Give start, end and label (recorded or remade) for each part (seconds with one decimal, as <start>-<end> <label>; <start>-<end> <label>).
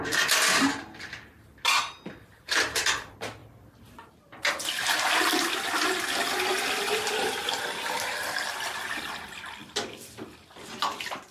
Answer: 0.0-11.3 recorded